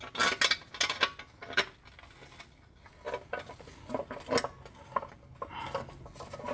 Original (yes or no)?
yes